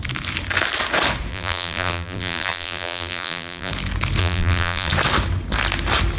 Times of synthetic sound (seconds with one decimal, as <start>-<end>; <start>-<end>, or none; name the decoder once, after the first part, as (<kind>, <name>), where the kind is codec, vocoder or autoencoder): 1.3-3.7 (vocoder, BigVGAN v2); 4.2-4.9